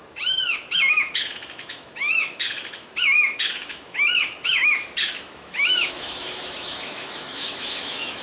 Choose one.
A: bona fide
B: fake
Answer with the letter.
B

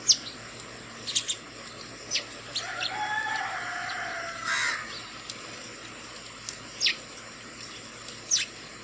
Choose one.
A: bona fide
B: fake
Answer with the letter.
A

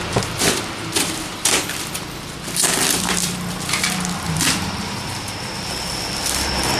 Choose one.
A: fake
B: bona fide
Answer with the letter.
A